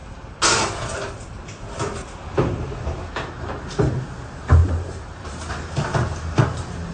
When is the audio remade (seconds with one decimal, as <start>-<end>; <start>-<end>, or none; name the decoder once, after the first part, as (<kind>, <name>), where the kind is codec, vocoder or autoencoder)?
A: 4.1-6.9 (vocoder, BigVGAN v2)